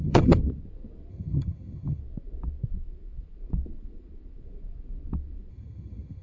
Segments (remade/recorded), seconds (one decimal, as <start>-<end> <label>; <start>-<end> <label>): 0.0-0.4 remade; 0.4-1.1 recorded; 1.1-2.0 remade; 2.0-5.5 recorded; 5.5-6.2 remade